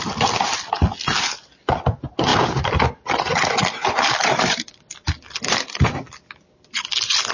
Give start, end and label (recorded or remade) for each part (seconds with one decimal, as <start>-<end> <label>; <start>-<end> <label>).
0.0-2.3 recorded; 2.3-3.4 remade; 3.4-3.8 recorded; 3.8-6.0 remade; 6.0-7.3 recorded